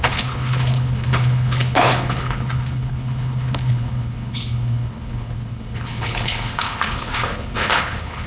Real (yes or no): no